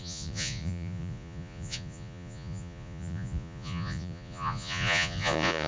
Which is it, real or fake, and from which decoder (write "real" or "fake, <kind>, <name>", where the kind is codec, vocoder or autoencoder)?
fake, vocoder, Vocos